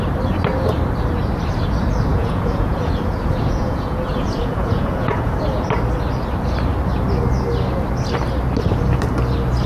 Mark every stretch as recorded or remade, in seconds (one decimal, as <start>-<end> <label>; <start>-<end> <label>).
0.0-2.1 recorded; 2.1-5.3 remade; 5.3-9.7 recorded